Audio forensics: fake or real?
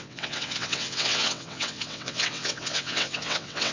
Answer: fake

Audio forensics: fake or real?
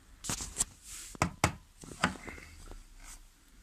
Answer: real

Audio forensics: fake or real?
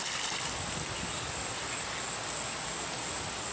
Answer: real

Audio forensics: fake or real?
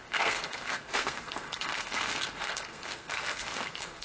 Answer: fake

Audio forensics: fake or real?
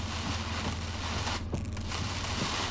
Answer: real